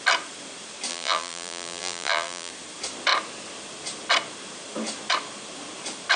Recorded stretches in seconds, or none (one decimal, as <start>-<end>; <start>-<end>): 0.0-0.9; 2.5-6.2